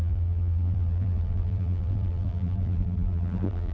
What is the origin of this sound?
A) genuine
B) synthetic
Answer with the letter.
B